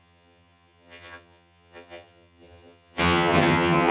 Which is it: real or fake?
fake